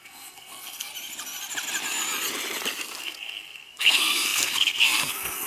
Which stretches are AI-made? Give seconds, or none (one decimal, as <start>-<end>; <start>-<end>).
0.0-0.9; 3.0-5.5